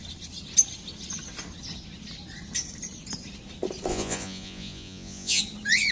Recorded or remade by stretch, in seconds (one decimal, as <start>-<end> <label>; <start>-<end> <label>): 0.0-3.9 recorded; 3.9-5.4 remade; 5.4-5.9 recorded